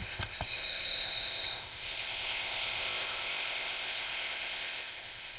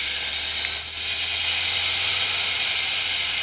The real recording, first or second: second